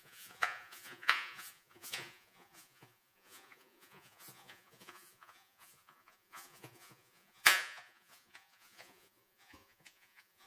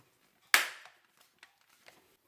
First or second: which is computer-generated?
first